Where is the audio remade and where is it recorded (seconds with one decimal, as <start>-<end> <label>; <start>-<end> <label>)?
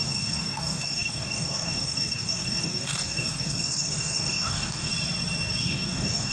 0.0-4.9 remade; 4.9-5.6 recorded; 5.6-6.3 remade